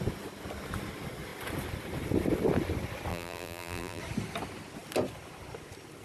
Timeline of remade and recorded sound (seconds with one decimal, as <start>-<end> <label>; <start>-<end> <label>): 0.0-3.1 recorded; 3.1-4.0 remade; 4.0-6.0 recorded